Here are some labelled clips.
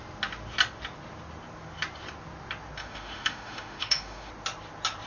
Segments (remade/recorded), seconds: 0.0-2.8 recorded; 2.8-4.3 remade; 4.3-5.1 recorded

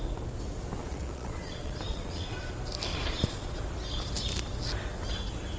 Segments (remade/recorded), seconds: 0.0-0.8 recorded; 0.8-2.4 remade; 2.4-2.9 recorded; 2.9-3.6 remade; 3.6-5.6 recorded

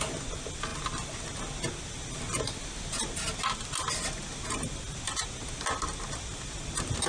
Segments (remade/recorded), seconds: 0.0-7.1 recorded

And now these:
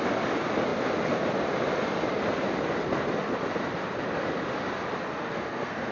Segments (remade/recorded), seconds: 0.0-5.1 recorded; 5.1-5.9 remade

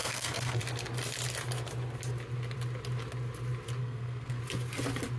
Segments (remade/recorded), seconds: 0.0-0.6 remade; 0.6-3.8 recorded; 3.8-4.4 remade; 4.4-5.2 recorded